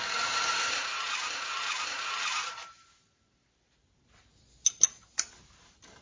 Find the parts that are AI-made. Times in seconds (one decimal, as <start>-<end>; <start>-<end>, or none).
0.0-0.9; 2.2-3.0; 5.6-6.0